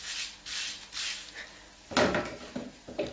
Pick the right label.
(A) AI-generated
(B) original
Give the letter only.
B